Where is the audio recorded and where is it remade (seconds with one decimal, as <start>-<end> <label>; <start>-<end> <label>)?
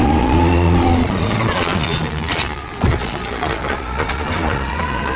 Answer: 0.0-5.2 remade